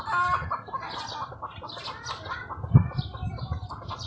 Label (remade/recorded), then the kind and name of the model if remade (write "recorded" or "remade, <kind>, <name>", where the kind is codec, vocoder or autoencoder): recorded